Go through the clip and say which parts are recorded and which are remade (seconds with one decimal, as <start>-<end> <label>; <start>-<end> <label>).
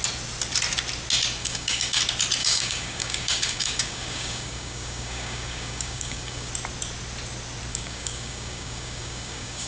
0.0-1.4 recorded; 1.4-2.0 remade; 2.0-2.4 recorded; 2.4-6.5 remade; 6.5-7.7 recorded; 7.7-9.7 remade